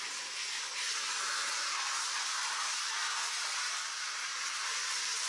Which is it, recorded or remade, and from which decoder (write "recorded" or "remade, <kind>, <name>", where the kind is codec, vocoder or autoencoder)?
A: remade, vocoder, BigVGAN v2